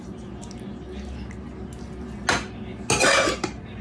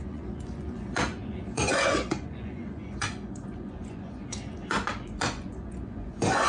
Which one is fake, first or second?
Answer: second